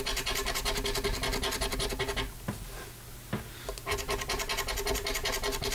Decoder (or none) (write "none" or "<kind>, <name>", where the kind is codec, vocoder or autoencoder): none